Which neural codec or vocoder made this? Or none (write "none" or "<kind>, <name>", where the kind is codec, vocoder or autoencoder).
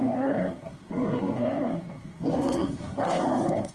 codec, SNAC